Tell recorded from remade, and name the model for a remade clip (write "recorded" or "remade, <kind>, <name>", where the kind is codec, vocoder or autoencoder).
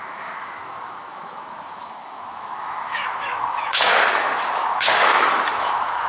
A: remade, autoencoder, DAC-VAE